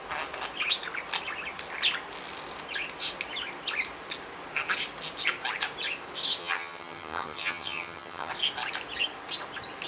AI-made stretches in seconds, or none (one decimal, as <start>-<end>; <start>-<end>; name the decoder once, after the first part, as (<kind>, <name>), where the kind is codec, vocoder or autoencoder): 6.4-8.3 (vocoder, HiFi-GAN)